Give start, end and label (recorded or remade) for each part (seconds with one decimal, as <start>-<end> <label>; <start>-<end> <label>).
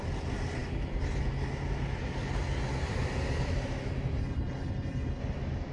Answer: 0.0-4.2 recorded; 4.2-5.2 remade; 5.2-5.7 recorded